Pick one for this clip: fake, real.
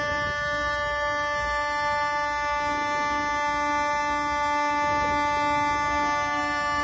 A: real